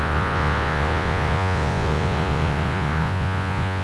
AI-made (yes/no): yes